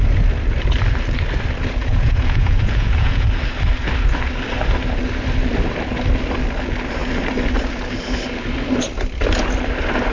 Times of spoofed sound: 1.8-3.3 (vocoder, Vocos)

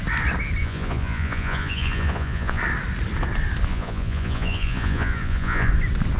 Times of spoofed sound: 0.6-2.6 (vocoder, Vocos); 3.7-5.7